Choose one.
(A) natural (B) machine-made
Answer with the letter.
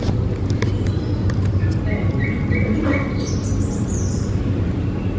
A